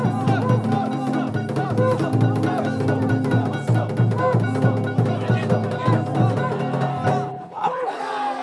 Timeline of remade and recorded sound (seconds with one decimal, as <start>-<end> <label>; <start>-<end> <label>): 0.0-7.3 recorded; 7.3-8.0 remade; 8.0-8.4 recorded